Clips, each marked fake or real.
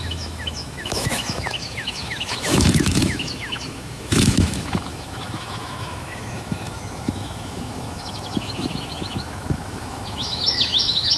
fake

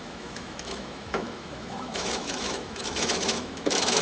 fake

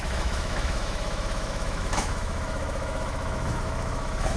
fake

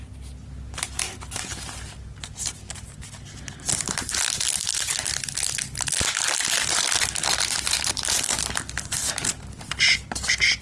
real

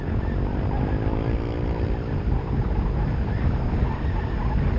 real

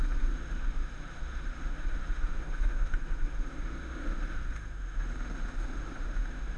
fake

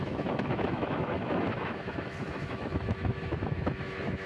fake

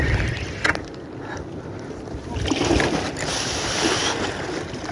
real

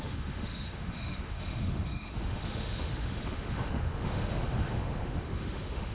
fake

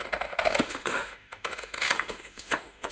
fake